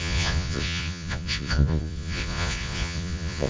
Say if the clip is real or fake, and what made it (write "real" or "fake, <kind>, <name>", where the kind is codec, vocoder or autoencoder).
fake, vocoder, Vocos